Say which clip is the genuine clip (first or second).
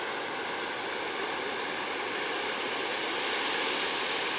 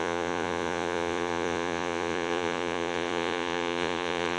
first